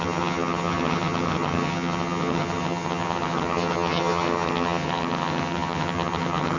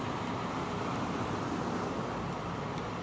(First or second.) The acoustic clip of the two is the second